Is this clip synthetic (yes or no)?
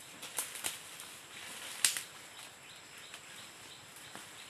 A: no